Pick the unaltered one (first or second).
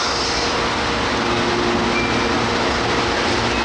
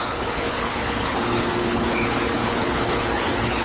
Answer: first